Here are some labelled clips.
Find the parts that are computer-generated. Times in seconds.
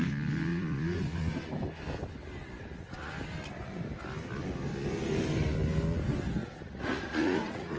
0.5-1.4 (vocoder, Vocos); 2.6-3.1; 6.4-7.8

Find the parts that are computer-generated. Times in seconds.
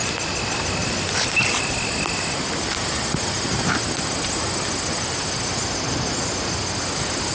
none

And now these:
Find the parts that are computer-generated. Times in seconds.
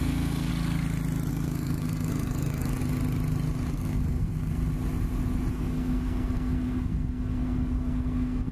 0.0-0.5 (codec, SNAC); 1.3-2.8; 3.7-4.6; 5.5-8.5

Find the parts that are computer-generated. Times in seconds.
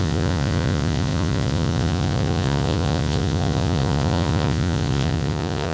0.0-5.7 (vocoder, Vocos)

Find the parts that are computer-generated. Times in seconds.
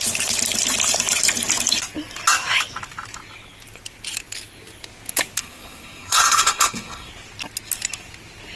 5.4-7.1 (codec, SNAC)